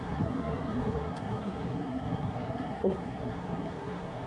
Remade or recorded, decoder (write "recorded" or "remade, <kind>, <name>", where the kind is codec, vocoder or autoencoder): remade, codec, SNAC